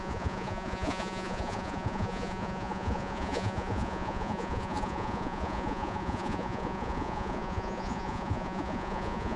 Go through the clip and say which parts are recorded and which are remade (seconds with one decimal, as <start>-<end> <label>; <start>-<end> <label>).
0.0-9.4 remade